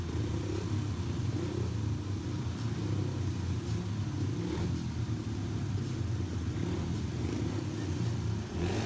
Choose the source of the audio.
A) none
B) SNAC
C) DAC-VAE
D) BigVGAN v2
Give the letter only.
A